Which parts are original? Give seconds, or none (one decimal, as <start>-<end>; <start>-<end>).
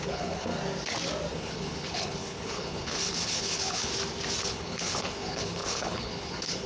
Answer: 0.5-1.3; 3.9-4.4